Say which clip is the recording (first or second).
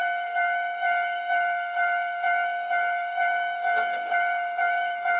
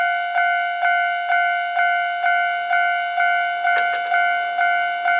second